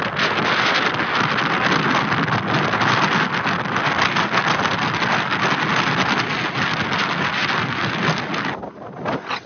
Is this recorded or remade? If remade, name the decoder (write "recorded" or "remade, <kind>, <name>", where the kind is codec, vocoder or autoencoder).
recorded